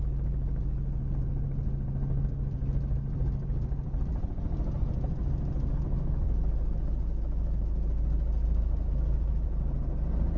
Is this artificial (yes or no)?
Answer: no